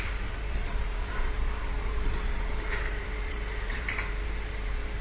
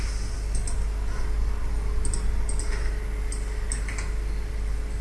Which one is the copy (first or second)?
first